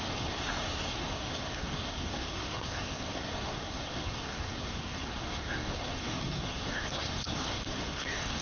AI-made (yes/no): yes